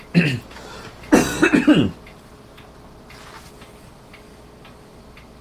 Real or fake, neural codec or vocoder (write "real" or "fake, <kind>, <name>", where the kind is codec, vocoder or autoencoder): real